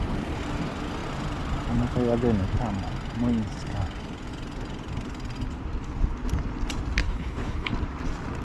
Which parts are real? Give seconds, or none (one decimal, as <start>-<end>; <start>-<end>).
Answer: 0.0-7.0; 7.7-8.4